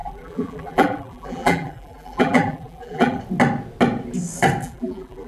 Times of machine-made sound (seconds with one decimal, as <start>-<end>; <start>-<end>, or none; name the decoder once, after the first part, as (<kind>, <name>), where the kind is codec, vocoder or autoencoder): 0.0-3.2 (vocoder, BigVGAN v2); 4.6-5.3